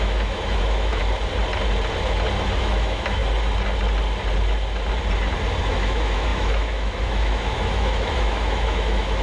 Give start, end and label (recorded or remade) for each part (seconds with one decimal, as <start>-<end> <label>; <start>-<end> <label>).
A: 0.0-1.0 remade; 1.0-2.6 recorded; 2.6-3.2 remade; 3.2-5.6 recorded; 5.6-9.2 remade